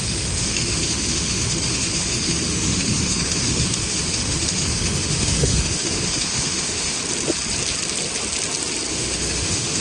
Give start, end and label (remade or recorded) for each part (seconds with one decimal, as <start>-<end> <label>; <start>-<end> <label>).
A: 0.0-7.0 remade; 7.0-8.9 recorded; 8.9-9.8 remade